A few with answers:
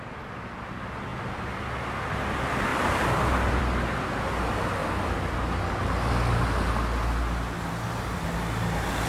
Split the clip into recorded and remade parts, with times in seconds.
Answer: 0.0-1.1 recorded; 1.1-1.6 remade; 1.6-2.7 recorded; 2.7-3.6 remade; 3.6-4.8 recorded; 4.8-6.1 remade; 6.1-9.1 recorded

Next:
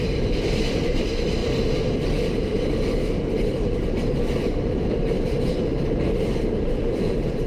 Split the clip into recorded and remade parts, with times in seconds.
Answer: 0.0-7.5 remade

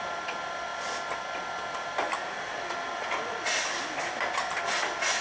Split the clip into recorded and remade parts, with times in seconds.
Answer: 0.0-5.2 recorded